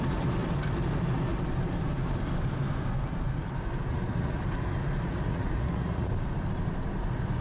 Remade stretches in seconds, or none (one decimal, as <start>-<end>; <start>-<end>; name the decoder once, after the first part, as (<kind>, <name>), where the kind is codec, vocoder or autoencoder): 3.9-4.4 (vocoder, Vocos); 5.3-6.1